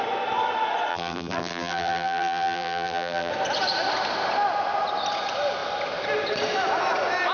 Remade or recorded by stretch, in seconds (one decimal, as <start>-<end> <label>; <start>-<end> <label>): 0.0-0.9 recorded; 0.9-3.3 remade; 3.3-7.3 recorded